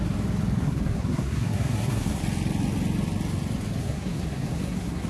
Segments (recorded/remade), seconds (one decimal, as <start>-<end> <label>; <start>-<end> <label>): 0.0-0.6 recorded; 0.6-2.2 remade; 2.2-3.8 recorded; 3.8-5.1 remade